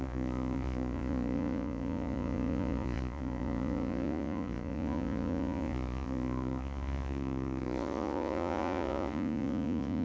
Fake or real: fake